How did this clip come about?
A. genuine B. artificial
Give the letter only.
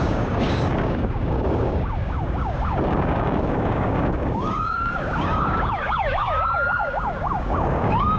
B